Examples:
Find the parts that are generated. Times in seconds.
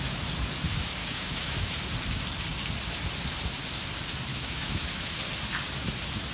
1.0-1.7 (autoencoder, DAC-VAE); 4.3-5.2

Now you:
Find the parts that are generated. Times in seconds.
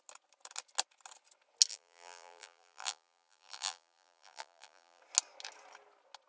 1.7-5.0 (vocoder, BigVGAN v2)